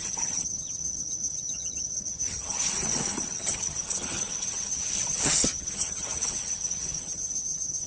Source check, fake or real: fake